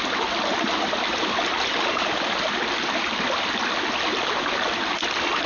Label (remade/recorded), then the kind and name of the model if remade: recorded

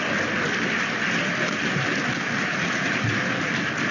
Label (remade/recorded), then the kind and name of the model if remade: recorded